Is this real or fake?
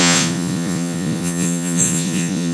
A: fake